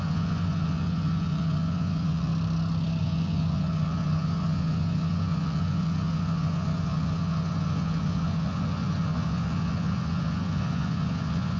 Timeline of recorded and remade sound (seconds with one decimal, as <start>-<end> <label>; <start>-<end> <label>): 0.0-2.3 remade; 2.3-3.0 recorded; 3.0-11.6 remade